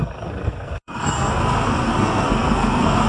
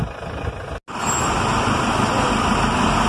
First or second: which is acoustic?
second